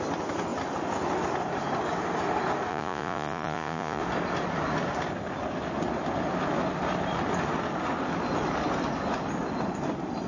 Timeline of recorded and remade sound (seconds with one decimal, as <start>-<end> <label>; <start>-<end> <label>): 0.0-2.7 recorded; 2.7-4.0 remade; 4.0-10.3 recorded

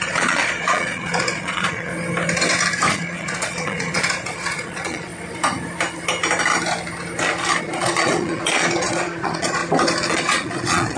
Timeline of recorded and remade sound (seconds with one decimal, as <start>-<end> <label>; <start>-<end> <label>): 0.0-1.9 remade; 1.9-2.9 recorded; 2.9-5.1 remade; 5.1-7.6 recorded; 7.6-9.6 remade; 9.6-10.1 recorded; 10.1-11.0 remade

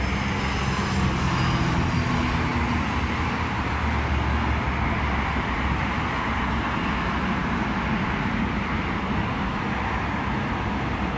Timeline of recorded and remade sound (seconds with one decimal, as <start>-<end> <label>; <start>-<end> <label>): 0.0-11.2 recorded

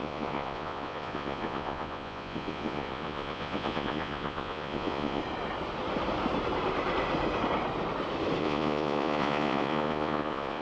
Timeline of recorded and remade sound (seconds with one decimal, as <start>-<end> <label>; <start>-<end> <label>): 0.0-5.2 remade; 5.2-8.4 recorded; 8.4-10.6 remade

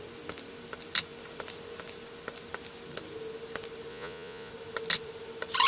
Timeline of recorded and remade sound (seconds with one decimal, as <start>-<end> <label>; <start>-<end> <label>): 0.0-3.9 recorded; 3.9-4.5 remade; 4.5-5.7 recorded

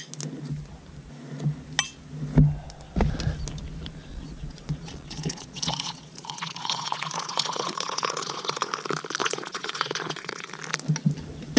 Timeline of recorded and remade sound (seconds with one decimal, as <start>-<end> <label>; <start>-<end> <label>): 0.0-4.1 recorded; 4.1-8.7 remade; 8.7-9.2 recorded; 9.2-10.5 remade; 10.5-11.6 recorded